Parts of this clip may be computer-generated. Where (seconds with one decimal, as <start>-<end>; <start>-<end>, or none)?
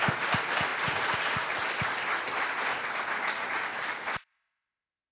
none